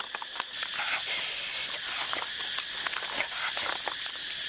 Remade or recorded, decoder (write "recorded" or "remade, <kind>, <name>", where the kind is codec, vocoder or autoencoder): recorded